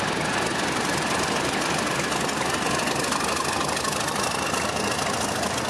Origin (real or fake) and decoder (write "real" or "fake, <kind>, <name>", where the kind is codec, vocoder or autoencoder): real